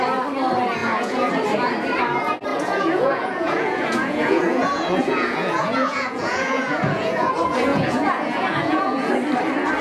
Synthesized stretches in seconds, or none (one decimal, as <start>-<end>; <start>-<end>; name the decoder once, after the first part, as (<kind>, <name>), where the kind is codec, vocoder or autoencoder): 0.8-1.3 (vocoder, Vocos); 2.5-7.3; 7.7-9.1